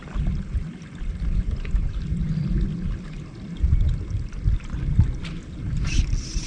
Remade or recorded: recorded